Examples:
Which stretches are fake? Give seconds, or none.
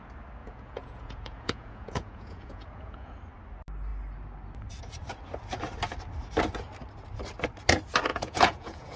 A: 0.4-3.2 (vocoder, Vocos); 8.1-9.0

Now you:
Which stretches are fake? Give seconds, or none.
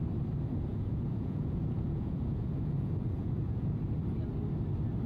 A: 0.7-3.8 (vocoder, Vocos)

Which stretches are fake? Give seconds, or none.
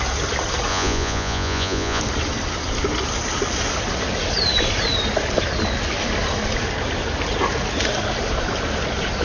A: 0.7-2.0 (vocoder, Vocos)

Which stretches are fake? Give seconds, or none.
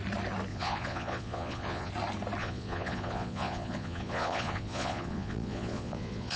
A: 0.5-1.9 (vocoder, Vocos); 2.4-6.4